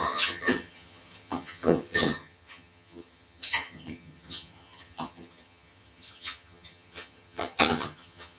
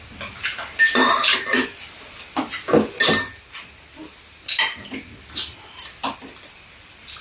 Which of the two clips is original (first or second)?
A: second